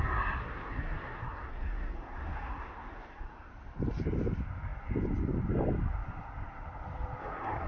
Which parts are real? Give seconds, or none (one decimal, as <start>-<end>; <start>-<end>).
0.0-0.4; 3.5-7.2